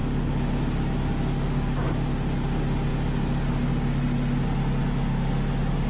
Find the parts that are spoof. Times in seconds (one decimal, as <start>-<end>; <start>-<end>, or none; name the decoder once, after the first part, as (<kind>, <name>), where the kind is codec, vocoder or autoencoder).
none